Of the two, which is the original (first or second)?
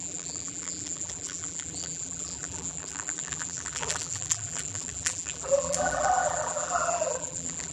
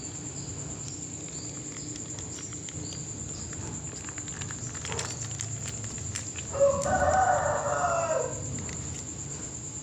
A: second